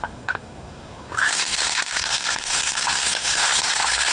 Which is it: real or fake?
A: fake